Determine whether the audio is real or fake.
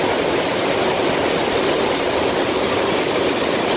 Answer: fake